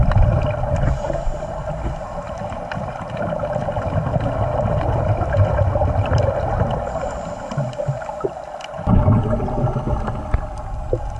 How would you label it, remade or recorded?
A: recorded